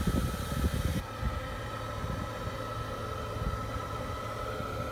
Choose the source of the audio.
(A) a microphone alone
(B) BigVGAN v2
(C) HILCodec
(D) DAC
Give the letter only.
A